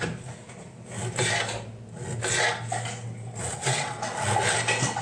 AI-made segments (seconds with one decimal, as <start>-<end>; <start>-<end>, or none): 3.4-4.1